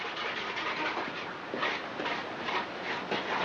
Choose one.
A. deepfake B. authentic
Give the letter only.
B